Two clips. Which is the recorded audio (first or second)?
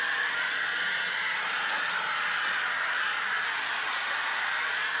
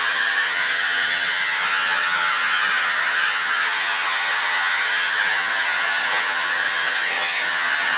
first